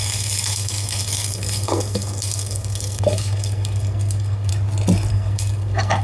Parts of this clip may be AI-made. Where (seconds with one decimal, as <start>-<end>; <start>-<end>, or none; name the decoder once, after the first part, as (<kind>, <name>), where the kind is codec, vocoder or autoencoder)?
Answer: 0.0-4.5 (codec, SNAC); 5.1-6.0